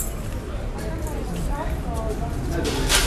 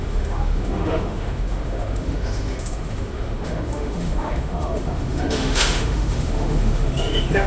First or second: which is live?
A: first